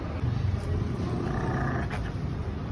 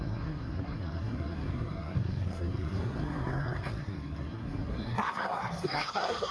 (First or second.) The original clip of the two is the first